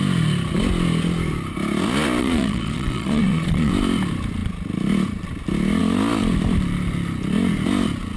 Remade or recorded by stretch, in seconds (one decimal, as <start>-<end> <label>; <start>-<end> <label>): 0.0-2.2 recorded; 2.2-3.7 remade; 3.7-8.2 recorded